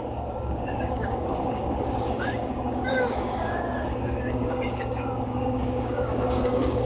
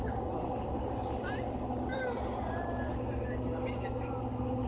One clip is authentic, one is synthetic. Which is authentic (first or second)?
second